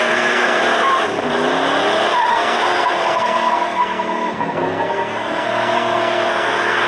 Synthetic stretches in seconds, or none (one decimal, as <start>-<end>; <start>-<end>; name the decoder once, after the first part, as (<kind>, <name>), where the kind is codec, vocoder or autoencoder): 0.0-0.6 (codec, SNAC); 2.3-6.9

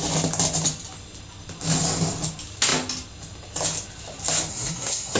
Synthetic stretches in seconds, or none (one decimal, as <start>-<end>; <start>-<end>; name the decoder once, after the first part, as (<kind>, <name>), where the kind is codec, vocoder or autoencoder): 4.5-5.2 (codec, SNAC)

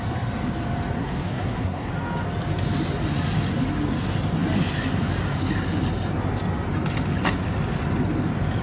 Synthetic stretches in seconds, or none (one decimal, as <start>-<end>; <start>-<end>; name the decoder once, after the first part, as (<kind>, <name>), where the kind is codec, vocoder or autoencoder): 1.0-1.9 (codec, SNAC)

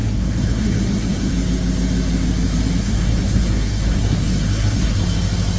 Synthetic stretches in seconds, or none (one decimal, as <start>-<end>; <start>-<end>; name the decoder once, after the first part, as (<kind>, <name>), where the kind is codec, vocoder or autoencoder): 0.0-1.3 (codec, SNAC); 2.8-5.0